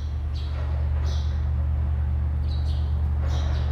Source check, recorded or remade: recorded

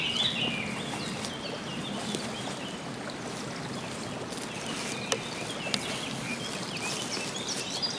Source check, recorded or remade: recorded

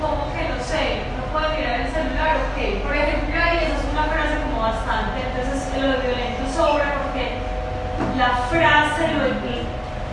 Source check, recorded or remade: recorded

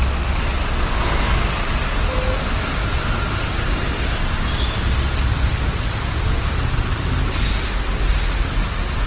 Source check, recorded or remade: recorded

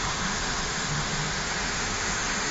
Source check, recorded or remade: remade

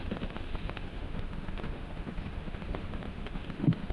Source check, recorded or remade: remade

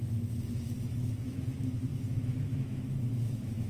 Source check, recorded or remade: remade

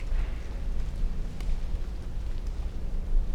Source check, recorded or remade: recorded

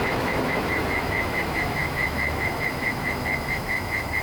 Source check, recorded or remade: remade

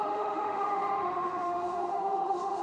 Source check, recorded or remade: remade